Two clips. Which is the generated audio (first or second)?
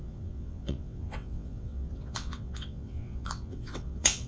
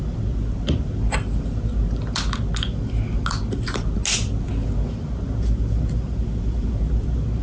first